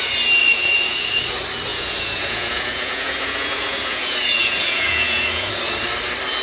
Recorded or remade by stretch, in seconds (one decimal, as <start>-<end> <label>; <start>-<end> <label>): 0.0-0.4 recorded; 0.4-1.2 remade; 1.2-1.7 recorded; 1.7-5.5 remade; 5.5-6.4 recorded